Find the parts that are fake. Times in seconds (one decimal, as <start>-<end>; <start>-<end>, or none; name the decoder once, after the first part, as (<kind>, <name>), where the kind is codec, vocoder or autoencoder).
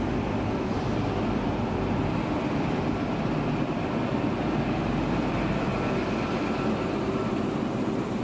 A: 0.0-5.7 (vocoder, BigVGAN v2); 6.7-8.2